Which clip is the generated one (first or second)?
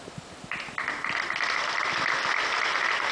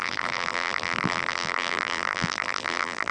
second